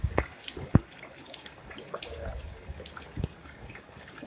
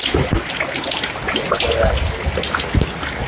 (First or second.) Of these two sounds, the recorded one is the second